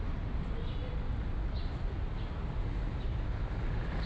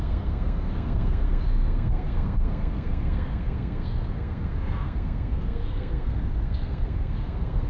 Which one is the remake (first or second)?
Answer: second